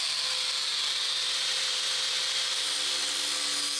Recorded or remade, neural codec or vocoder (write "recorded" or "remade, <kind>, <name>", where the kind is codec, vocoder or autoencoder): recorded